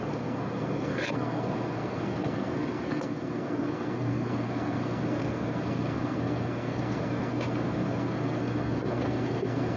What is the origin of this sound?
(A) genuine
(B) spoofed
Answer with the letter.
B